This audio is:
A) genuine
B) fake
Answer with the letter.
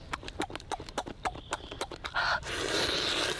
B